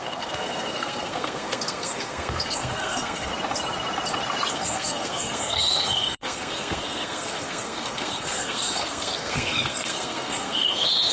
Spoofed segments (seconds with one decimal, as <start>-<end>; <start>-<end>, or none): 0.0-3.3; 4.5-11.1